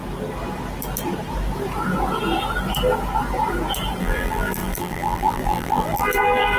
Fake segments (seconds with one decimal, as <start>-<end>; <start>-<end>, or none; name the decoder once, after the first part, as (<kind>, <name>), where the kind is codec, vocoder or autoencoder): 4.0-6.6 (vocoder, BigVGAN v2)